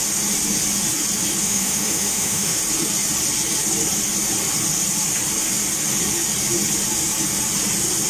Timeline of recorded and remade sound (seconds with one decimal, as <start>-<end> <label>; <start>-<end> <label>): 0.0-1.4 recorded; 1.4-2.6 remade; 2.6-8.1 recorded